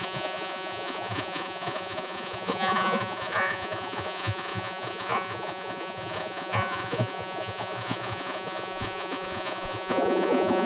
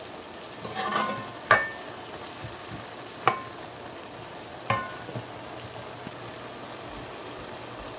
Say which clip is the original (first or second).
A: second